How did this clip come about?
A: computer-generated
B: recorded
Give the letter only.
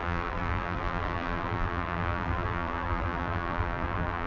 A